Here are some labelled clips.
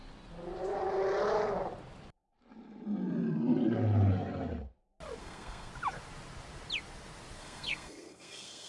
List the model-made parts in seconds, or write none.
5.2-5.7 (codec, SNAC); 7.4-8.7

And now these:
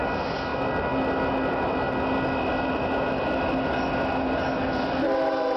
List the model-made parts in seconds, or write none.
none

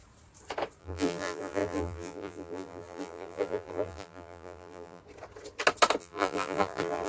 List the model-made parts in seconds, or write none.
0.8-5.0 (vocoder, BigVGAN v2); 6.0-7.1

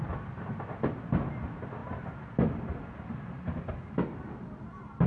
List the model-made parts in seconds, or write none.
none

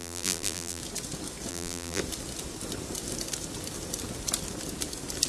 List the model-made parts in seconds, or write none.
0.0-0.8 (vocoder, BigVGAN v2); 1.5-2.0

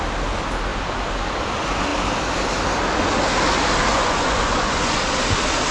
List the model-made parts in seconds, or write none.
3.9-5.0 (vocoder, Vocos)

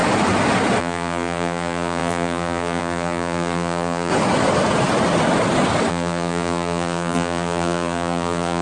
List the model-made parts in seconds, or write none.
0.8-4.1 (vocoder, BigVGAN v2); 5.9-8.6

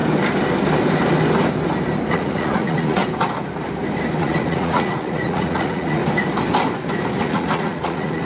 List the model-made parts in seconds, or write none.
2.1-3.0 (vocoder, Vocos); 4.2-6.0; 7.2-8.3